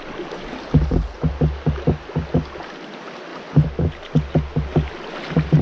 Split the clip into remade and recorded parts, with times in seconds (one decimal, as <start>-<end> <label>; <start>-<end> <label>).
0.0-5.6 recorded